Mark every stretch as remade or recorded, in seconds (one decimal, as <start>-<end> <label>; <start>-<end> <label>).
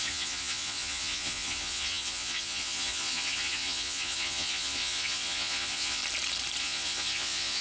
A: 0.0-6.0 remade; 6.0-6.6 recorded; 6.6-7.6 remade